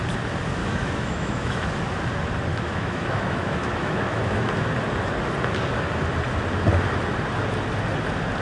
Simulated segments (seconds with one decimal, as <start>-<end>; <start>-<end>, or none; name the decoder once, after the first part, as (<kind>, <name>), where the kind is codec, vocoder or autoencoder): 0.6-1.7 (autoencoder, DAC-VAE); 2.5-4.5